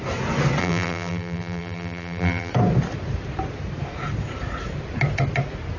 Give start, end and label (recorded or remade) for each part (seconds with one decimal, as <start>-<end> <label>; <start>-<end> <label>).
0.0-0.6 recorded; 0.6-2.5 remade; 2.5-5.8 recorded